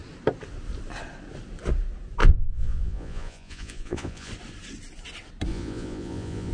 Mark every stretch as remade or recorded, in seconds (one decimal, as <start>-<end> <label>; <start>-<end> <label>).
0.0-2.2 recorded; 2.2-4.3 remade; 4.3-5.5 recorded; 5.5-6.5 remade